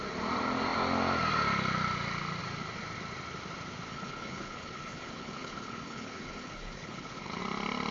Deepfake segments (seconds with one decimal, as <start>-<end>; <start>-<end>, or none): 3.9-7.4